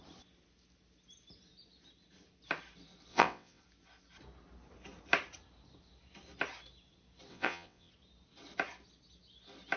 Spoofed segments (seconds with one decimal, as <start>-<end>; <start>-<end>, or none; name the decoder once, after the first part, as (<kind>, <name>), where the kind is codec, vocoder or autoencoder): 3.1-3.6 (vocoder, WaveNeXt); 7.3-7.9